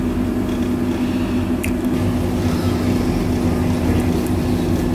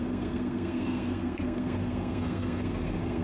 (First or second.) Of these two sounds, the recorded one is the first